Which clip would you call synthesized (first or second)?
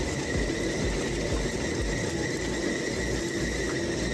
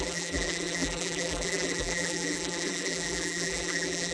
second